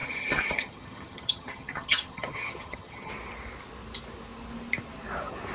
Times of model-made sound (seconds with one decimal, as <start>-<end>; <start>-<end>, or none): 0.0-3.1